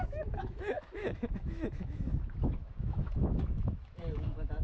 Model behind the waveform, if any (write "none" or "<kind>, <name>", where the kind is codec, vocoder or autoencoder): autoencoder, DAC-VAE